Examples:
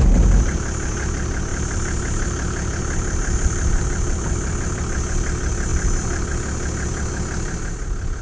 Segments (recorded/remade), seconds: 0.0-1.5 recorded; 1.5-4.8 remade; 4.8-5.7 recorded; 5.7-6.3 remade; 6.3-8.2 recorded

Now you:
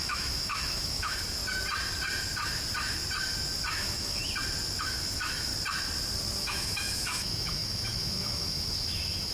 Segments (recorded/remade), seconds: 0.0-1.4 remade; 1.4-3.7 recorded; 3.7-4.2 remade; 4.2-4.8 recorded; 4.8-5.5 remade; 5.5-6.4 recorded; 6.4-9.3 remade

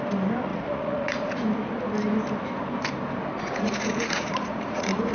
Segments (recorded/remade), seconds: 0.0-0.5 recorded; 0.5-1.3 remade; 1.3-3.3 recorded; 3.3-5.1 remade

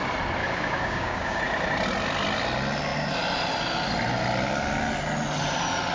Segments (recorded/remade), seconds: 0.0-0.4 recorded; 0.4-1.4 remade; 1.4-5.9 recorded

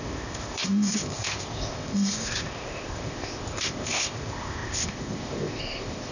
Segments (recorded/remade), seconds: 0.0-6.1 remade

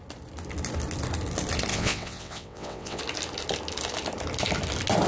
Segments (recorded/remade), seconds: 0.0-1.7 recorded; 1.7-3.0 remade; 3.0-5.1 recorded